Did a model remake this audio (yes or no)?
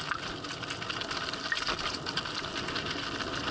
no